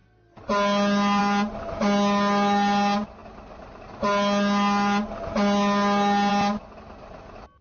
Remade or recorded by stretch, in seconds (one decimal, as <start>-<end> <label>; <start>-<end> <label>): 0.0-7.6 recorded